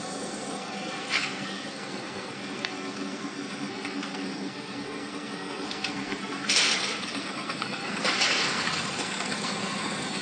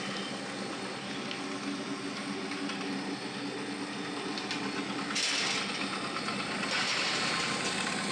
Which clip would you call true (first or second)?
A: second